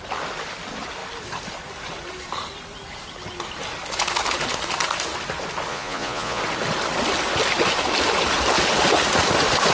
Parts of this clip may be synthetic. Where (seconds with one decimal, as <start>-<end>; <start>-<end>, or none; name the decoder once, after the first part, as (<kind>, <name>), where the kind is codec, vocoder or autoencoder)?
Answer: 5.7-6.4 (vocoder, Vocos)